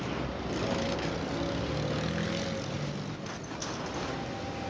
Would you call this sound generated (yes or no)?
no